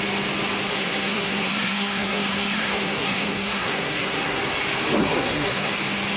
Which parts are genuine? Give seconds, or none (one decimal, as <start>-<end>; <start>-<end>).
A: 0.0-0.7; 4.4-5.0; 5.7-6.2